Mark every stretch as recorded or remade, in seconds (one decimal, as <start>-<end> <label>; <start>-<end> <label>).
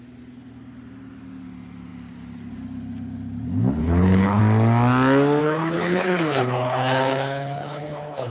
0.0-3.8 recorded; 3.8-4.4 remade; 4.4-5.4 recorded; 5.4-8.3 remade